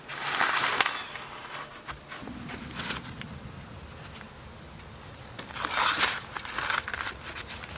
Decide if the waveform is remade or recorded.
recorded